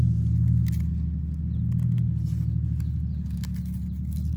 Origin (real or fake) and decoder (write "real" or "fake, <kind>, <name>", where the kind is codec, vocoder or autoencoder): real